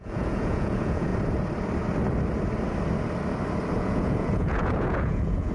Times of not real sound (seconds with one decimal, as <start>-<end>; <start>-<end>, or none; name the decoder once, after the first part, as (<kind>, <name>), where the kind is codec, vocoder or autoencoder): 0.0-1.1 (vocoder, Vocos); 3.8-5.5